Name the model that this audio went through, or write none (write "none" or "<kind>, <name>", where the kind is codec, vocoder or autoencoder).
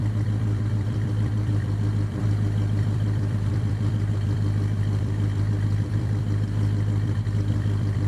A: vocoder, BigVGAN v2